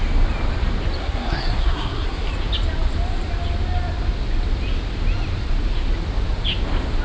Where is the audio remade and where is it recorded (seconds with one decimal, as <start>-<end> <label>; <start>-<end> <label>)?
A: 0.0-1.0 recorded; 1.0-2.3 remade; 2.3-7.0 recorded